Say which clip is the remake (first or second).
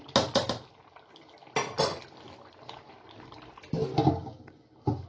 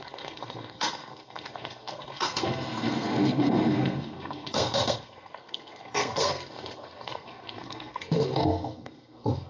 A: second